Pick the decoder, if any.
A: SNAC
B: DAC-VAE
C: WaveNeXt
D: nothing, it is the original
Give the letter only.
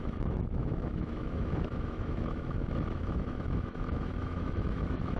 B